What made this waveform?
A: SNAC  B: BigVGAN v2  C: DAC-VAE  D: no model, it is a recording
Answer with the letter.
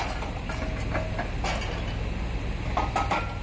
D